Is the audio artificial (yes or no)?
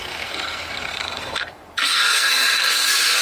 yes